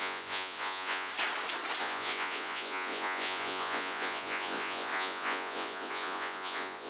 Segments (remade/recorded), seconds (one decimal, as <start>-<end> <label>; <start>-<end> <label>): 0.0-1.1 remade; 1.1-1.8 recorded; 1.8-6.9 remade